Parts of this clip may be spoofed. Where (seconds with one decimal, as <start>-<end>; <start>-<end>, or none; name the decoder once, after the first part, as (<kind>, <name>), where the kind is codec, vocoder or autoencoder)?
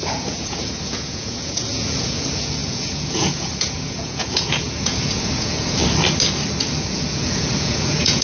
0.0-5.8 (vocoder, Vocos); 6.8-8.2